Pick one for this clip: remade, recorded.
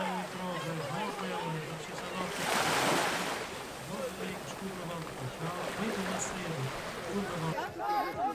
recorded